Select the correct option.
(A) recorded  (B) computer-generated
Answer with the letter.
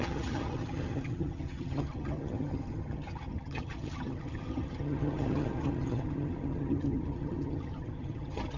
B